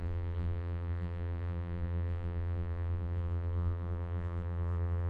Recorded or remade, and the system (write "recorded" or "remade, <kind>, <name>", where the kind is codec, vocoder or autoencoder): remade, vocoder, BigVGAN v2